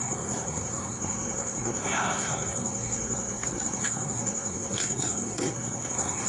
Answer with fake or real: fake